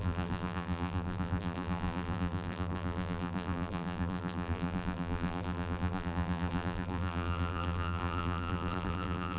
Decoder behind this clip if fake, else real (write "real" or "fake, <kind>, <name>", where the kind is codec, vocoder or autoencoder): fake, vocoder, BigVGAN v2